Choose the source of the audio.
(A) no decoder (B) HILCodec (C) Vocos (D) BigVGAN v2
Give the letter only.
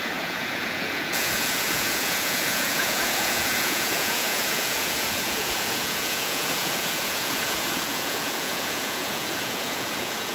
C